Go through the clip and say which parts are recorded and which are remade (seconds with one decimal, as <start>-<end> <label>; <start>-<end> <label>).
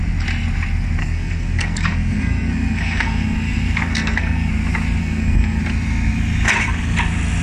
0.0-1.0 recorded; 1.0-4.5 remade; 4.5-5.0 recorded; 5.0-5.6 remade; 5.6-7.4 recorded